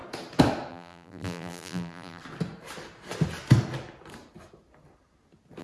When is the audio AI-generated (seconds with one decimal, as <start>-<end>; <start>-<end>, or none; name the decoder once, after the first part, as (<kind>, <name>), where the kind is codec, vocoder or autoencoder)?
0.7-2.2 (vocoder, BigVGAN v2)